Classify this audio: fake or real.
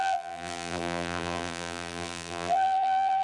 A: fake